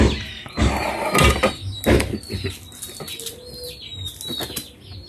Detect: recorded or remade recorded